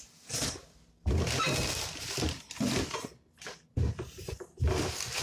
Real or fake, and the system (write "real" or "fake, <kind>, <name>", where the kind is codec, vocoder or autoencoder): fake, vocoder, BigVGAN v2